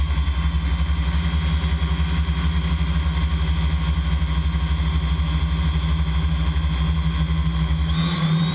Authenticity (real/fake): real